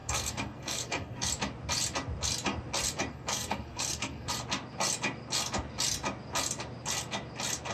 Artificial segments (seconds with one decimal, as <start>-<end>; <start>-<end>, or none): 0.0-1.3; 3.1-4.3